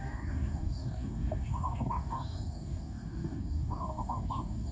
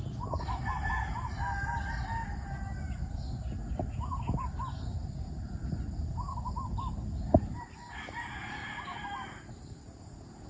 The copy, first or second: first